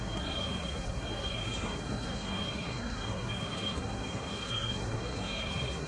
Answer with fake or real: fake